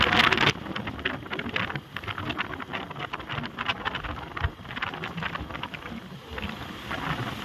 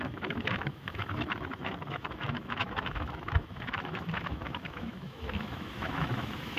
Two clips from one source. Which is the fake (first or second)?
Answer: second